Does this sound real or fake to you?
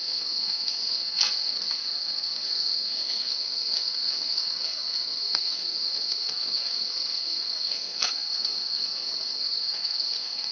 fake